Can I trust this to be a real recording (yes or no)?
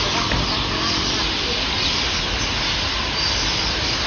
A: yes